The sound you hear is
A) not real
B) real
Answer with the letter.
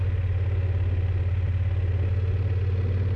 B